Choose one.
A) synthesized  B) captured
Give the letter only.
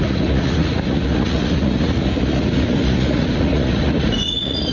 A